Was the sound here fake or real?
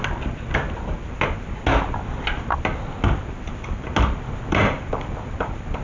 real